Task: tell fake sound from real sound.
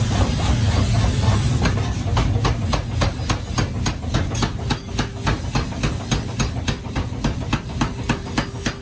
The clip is real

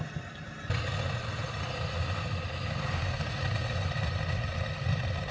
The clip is real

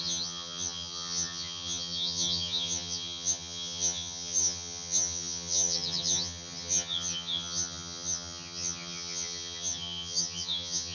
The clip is fake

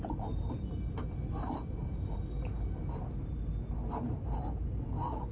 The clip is real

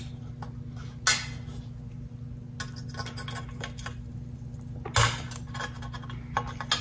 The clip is real